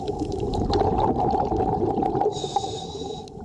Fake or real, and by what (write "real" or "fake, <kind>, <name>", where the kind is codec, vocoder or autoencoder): fake, vocoder, BigVGAN v2